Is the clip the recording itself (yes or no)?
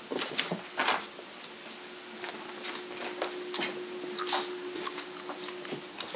yes